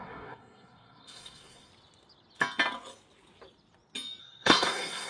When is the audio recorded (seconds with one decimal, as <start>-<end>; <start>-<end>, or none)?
1.7-4.2